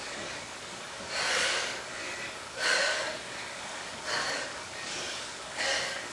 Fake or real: fake